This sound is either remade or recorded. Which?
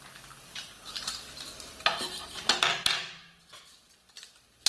recorded